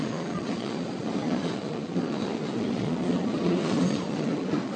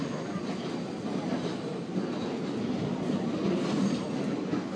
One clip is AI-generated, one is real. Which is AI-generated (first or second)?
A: first